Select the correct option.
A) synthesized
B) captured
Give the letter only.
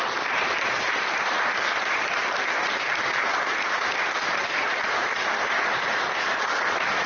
A